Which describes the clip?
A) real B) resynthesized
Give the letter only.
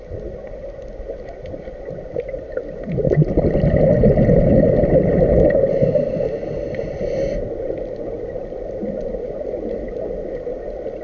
B